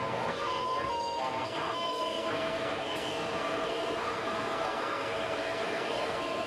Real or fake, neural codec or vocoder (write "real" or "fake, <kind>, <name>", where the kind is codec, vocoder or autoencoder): fake, codec, SNAC